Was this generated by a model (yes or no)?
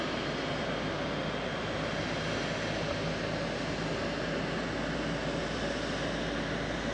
no